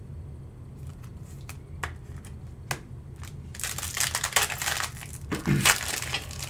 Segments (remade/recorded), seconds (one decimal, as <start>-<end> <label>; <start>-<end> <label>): 0.0-6.5 recorded